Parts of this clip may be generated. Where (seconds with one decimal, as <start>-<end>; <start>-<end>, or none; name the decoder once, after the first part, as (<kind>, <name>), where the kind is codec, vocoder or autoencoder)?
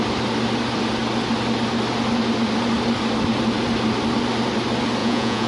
5.0-5.5 (vocoder, Vocos)